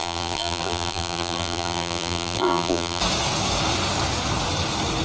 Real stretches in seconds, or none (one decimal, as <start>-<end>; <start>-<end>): 3.0-5.0